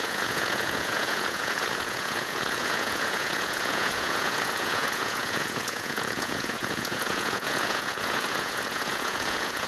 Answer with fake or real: fake